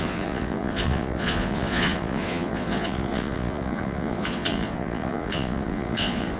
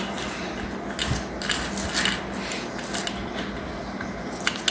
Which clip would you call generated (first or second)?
first